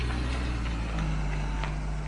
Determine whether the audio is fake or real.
real